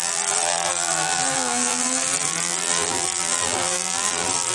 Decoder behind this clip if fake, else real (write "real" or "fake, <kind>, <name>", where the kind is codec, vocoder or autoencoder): fake, vocoder, BigVGAN v2